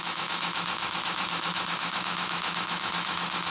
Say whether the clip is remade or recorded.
remade